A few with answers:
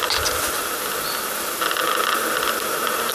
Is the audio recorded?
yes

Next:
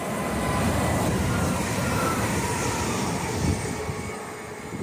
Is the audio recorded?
yes